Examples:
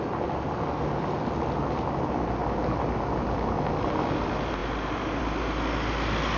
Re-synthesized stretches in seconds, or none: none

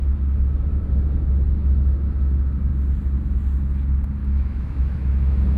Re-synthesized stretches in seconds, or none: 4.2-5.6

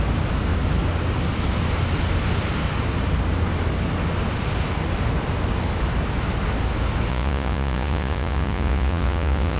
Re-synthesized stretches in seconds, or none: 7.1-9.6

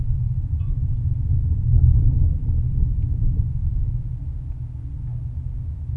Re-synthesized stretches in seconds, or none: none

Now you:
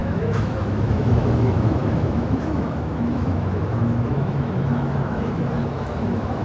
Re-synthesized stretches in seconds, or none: 0.0-6.4

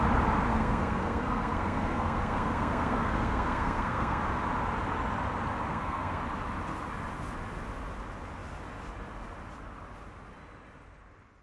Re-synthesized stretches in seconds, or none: 0.5-4.2; 5.7-6.2

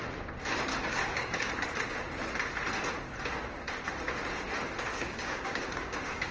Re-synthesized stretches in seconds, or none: 0.7-1.5; 4.9-6.3

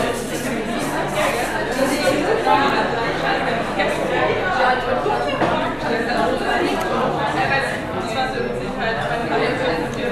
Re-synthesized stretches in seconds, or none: 5.7-8.3; 9.2-9.7